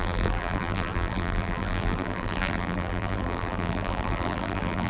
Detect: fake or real fake